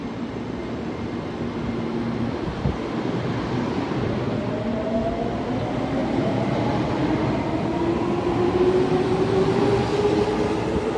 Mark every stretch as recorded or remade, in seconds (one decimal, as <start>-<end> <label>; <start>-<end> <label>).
0.0-6.0 recorded; 6.0-6.6 remade; 6.6-11.0 recorded